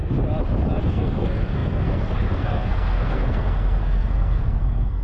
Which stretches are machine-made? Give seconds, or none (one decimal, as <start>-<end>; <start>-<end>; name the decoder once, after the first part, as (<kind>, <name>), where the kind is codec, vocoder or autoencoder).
0.8-5.0 (codec, SNAC)